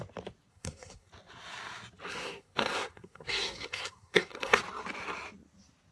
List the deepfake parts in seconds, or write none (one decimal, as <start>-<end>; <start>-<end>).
0.5-1.1; 2.1-4.6